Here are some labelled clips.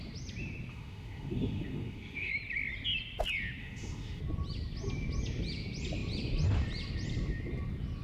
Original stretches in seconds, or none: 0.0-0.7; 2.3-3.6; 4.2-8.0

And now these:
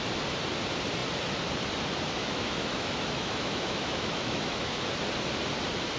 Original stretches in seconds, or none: 0.0-2.2; 4.9-6.0

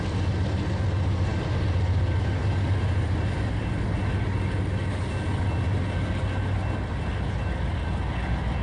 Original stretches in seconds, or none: 0.0-8.6

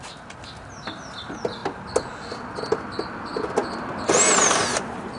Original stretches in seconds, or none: 0.0-5.2

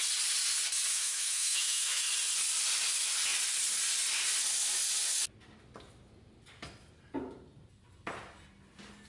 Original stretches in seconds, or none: 0.0-0.9; 2.1-9.1